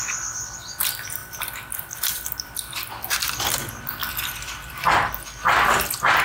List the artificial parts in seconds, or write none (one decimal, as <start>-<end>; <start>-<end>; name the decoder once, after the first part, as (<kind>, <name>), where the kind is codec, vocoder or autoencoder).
1.2-3.3 (vocoder, BigVGAN v2); 4.0-4.9